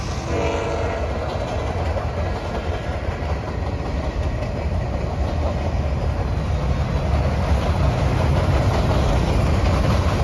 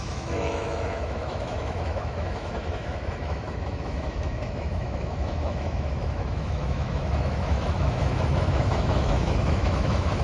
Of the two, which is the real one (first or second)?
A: first